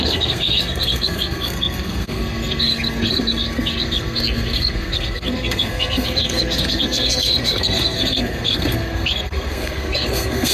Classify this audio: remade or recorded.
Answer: remade